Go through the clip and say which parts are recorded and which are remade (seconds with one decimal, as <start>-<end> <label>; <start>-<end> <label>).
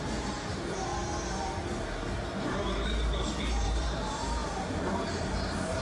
0.0-0.9 remade; 0.9-2.1 recorded; 2.1-5.8 remade